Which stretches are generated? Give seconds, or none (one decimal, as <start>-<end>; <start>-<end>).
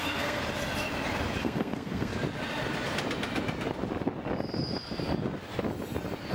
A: 0.0-0.4; 1.4-2.1